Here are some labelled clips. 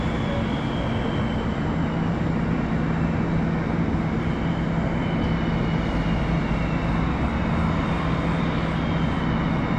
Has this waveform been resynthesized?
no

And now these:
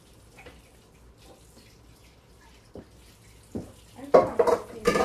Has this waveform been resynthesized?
yes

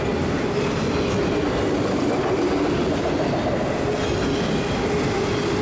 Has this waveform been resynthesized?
no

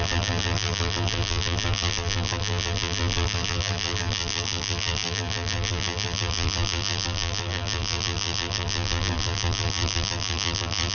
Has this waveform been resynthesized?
yes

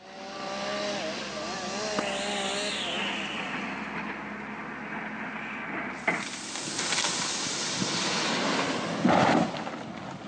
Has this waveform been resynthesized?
no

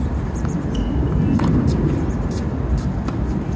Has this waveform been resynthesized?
no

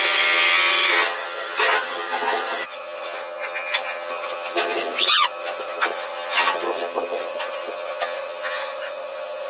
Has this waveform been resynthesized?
yes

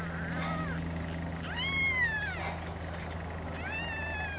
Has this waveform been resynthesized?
no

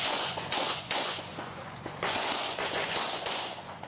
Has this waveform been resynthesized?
yes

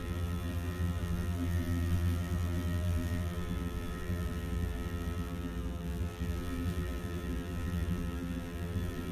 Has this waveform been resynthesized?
yes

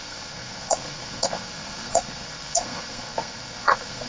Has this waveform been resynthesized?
yes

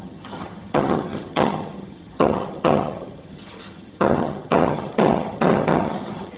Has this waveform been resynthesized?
yes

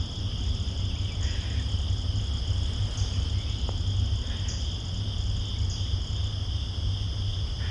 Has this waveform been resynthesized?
no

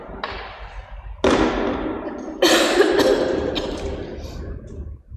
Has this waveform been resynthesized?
no